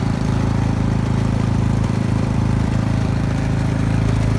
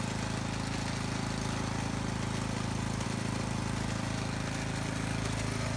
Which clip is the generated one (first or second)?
first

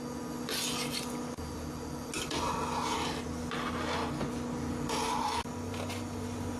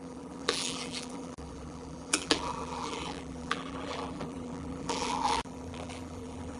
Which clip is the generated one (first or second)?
second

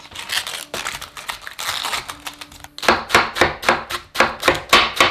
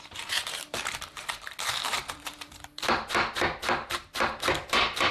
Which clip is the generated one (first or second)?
second